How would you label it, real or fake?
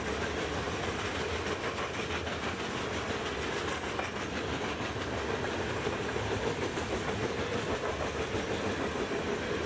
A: real